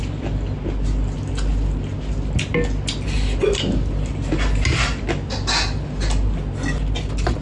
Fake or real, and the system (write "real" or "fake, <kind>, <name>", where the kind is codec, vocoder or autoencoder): real